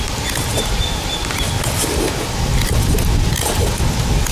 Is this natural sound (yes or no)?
yes